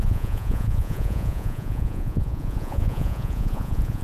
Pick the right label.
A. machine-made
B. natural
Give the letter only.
A